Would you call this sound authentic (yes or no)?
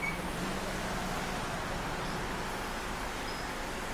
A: yes